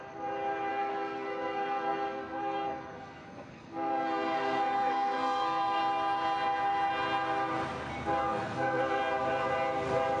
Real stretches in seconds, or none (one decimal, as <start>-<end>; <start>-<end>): 0.0-0.7; 5.8-8.2; 9.0-10.2